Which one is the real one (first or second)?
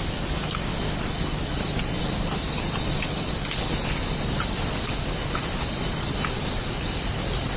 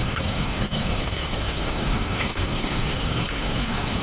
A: first